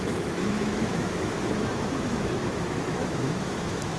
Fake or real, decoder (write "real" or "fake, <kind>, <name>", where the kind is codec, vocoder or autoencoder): fake, autoencoder, DAC-VAE